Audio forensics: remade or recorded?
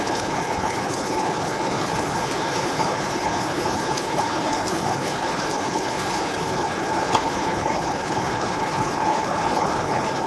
remade